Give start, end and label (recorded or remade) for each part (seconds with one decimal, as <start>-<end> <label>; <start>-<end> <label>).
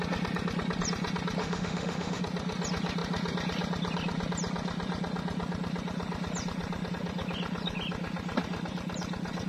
0.0-1.4 recorded; 1.4-2.2 remade; 2.2-9.5 recorded